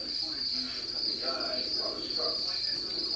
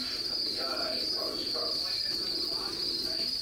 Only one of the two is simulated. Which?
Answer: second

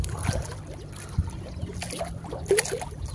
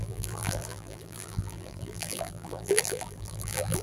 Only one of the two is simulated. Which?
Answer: second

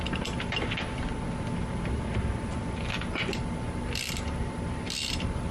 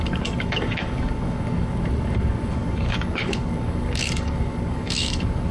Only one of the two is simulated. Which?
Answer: second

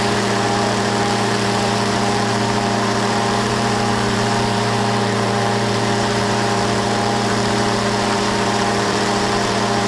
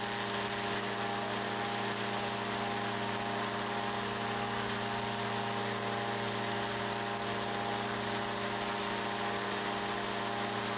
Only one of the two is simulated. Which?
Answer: first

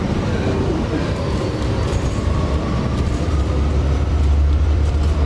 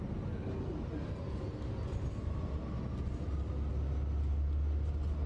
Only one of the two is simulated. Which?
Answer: first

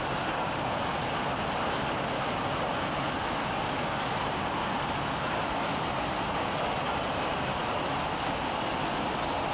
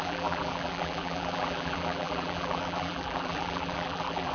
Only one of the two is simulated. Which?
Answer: second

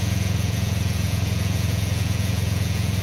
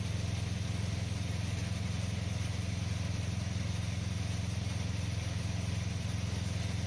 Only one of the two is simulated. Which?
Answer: first